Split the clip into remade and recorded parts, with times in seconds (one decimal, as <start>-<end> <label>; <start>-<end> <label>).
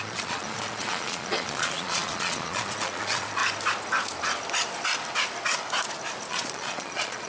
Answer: 0.0-3.4 remade; 3.4-6.3 recorded; 6.3-7.3 remade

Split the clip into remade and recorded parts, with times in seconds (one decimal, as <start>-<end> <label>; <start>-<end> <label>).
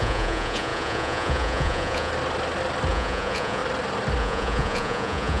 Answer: 0.0-2.1 remade; 2.1-2.9 recorded; 2.9-3.6 remade; 3.6-4.2 recorded; 4.2-5.4 remade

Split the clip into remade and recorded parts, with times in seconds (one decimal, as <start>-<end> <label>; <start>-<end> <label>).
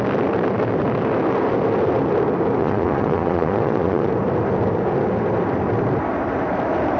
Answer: 0.0-2.6 recorded; 2.6-4.1 remade; 4.1-7.0 recorded